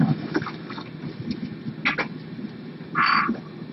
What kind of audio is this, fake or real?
real